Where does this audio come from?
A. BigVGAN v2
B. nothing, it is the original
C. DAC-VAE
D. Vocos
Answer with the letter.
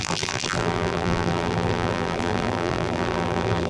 A